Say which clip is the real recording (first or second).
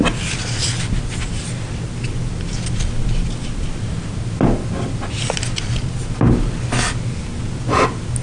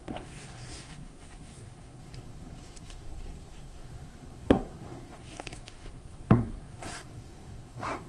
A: first